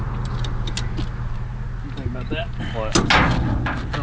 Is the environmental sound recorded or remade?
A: recorded